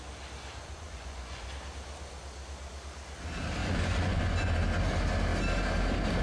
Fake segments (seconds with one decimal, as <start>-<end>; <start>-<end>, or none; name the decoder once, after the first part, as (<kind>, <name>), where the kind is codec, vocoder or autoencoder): 0.6-1.5 (vocoder, Vocos); 3.6-4.5